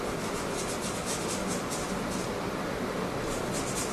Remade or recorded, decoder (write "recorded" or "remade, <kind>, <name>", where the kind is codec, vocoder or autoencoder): recorded